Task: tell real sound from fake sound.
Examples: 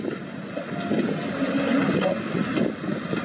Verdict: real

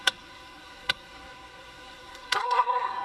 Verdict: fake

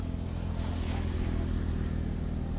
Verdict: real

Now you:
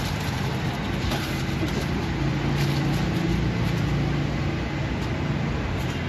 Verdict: real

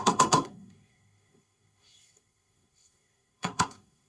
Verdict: fake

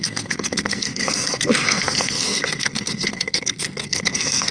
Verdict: fake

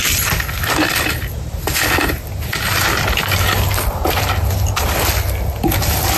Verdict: real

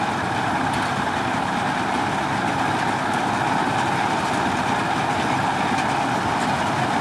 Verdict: real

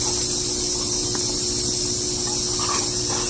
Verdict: real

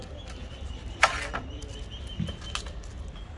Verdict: real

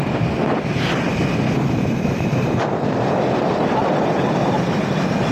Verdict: real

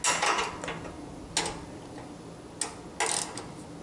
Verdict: real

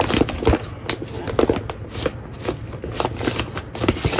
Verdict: real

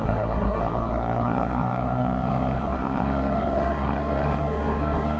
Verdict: fake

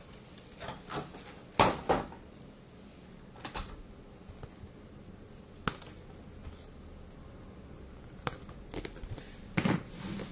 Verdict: real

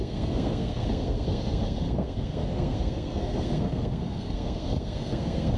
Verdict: fake